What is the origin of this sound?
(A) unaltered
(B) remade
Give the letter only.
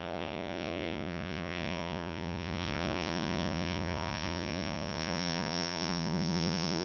B